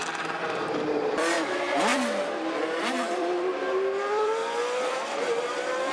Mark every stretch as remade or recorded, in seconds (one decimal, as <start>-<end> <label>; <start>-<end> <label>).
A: 0.0-1.9 remade; 1.9-2.8 recorded; 2.8-3.5 remade; 3.5-4.1 recorded; 4.1-5.9 remade